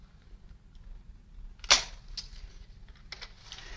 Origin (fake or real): real